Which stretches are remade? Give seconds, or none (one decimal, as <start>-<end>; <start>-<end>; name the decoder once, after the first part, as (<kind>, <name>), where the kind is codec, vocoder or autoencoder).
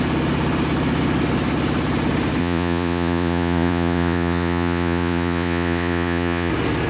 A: 2.4-6.5 (vocoder, Vocos)